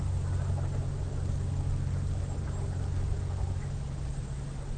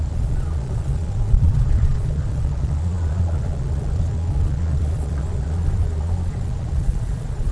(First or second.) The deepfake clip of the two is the second